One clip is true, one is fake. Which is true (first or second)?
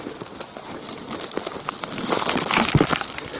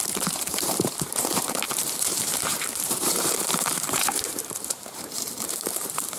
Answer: first